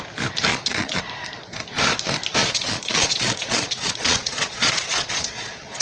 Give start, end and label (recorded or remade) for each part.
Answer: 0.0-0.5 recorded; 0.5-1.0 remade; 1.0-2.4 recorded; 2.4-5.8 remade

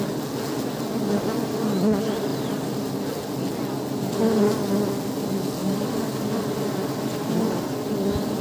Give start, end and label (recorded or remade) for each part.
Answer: 0.0-2.3 recorded; 2.3-3.1 remade; 3.1-5.6 recorded; 5.6-6.6 remade; 6.6-8.4 recorded

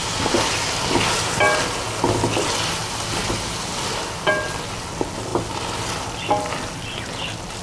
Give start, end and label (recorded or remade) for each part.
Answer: 0.0-7.6 recorded

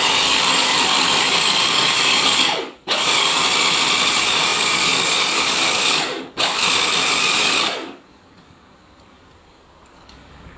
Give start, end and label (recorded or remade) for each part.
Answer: 0.0-3.4 remade; 3.4-4.1 recorded; 4.1-6.6 remade; 6.6-7.2 recorded; 7.2-10.6 remade